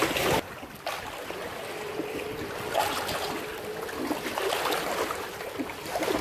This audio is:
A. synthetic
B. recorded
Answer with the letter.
B